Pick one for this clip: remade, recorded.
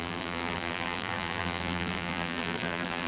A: remade